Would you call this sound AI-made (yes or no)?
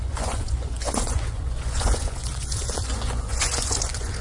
yes